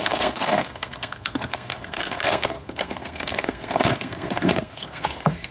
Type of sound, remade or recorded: remade